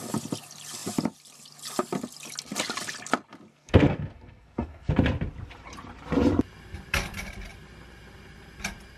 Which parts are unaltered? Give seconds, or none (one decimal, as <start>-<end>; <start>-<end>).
0.0-3.5; 4.9-9.0